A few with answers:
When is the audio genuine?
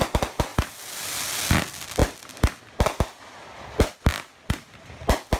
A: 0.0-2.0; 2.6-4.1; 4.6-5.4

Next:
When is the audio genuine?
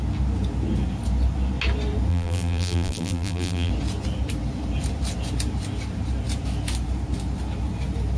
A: 0.0-2.1; 3.7-8.2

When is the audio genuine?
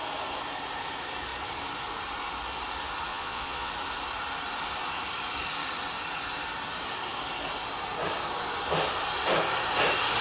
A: 0.0-3.1; 3.7-10.2